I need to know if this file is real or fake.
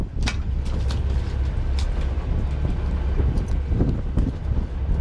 real